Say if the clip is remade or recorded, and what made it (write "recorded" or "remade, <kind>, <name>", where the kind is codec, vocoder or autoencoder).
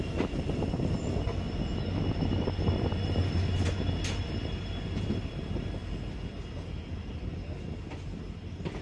recorded